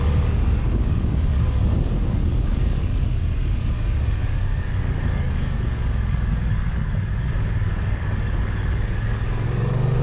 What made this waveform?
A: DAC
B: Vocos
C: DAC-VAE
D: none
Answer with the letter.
A